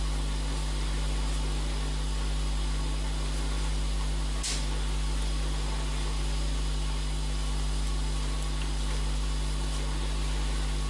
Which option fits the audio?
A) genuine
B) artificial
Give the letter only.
A